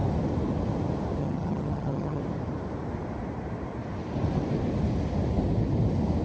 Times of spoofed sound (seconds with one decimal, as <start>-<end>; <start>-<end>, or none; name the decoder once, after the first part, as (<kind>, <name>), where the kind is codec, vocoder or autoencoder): 1.2-2.2 (vocoder, HiFi-GAN)